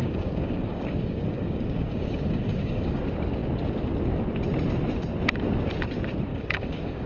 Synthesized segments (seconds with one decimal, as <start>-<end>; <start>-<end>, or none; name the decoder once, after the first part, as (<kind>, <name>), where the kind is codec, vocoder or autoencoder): 0.0-3.0 (codec, DAC); 6.3-7.1